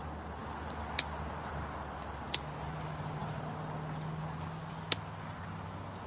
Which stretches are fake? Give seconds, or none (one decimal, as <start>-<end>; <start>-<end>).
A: none